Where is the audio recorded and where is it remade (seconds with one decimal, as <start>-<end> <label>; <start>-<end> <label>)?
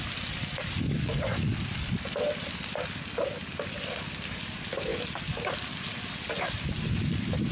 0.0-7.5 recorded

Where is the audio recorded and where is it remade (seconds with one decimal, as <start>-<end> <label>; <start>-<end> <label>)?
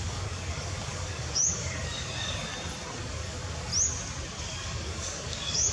0.0-2.5 remade; 2.5-3.0 recorded; 3.0-3.7 remade; 3.7-4.4 recorded; 4.4-5.7 remade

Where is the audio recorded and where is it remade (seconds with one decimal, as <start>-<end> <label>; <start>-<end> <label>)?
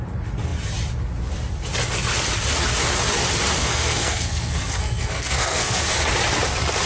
0.0-3.6 recorded; 3.6-5.8 remade; 5.8-6.9 recorded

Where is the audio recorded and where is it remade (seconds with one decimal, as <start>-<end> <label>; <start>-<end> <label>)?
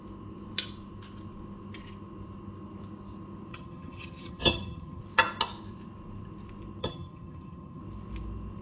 0.0-3.5 recorded; 3.5-5.0 remade; 5.0-6.8 recorded; 6.8-7.8 remade; 7.8-8.6 recorded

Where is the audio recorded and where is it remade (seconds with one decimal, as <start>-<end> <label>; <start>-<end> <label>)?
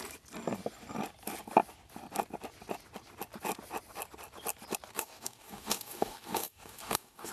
0.0-4.9 recorded; 4.9-7.3 remade